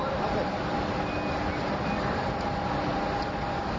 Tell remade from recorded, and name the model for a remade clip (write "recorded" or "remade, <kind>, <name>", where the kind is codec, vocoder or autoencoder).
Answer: recorded